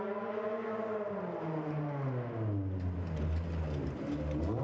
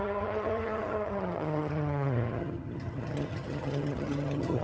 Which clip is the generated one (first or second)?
second